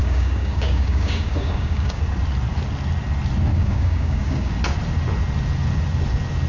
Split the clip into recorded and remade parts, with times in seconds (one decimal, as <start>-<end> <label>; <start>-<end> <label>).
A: 0.0-2.0 remade; 2.0-3.5 recorded; 3.5-4.5 remade; 4.5-6.5 recorded